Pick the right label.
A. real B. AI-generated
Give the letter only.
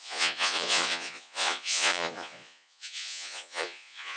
B